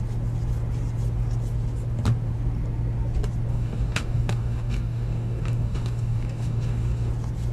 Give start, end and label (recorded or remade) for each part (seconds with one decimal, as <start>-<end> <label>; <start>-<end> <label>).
0.0-3.5 recorded; 3.5-7.1 remade; 7.1-7.5 recorded